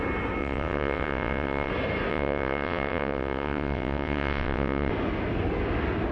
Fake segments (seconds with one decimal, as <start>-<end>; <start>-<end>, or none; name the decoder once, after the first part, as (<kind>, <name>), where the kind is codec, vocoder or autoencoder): 0.4-1.7 (vocoder, WaveNeXt); 2.1-4.9